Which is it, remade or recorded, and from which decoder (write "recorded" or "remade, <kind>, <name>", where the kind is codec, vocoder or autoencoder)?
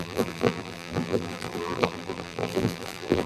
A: remade, vocoder, BigVGAN v2